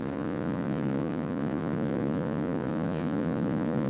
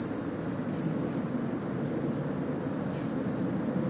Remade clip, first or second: first